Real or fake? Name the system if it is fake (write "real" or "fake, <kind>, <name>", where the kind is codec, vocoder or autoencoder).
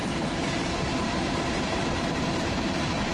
fake, vocoder, BigVGAN v2